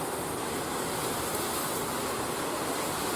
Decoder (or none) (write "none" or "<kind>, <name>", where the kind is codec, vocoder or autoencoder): none